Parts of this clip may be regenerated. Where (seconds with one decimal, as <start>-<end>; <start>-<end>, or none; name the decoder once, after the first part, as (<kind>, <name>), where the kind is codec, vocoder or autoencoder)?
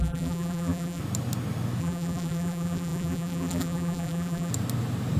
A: 0.0-1.0 (vocoder, BigVGAN v2); 1.8-4.5